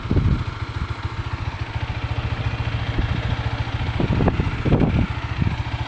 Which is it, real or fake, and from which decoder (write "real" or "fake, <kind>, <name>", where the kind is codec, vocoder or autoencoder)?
real